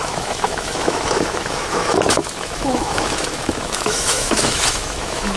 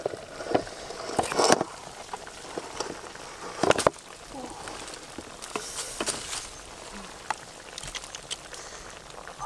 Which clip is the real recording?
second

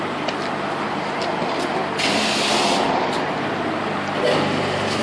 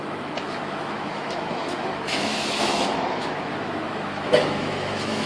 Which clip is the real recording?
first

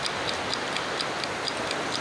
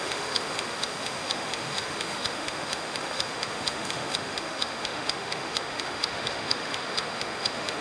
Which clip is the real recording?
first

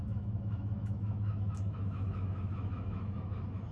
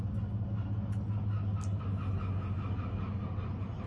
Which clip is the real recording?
second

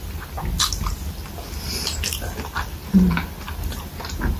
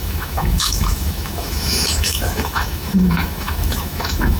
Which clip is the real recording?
first